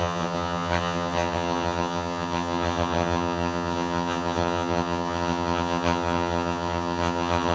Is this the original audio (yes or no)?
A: no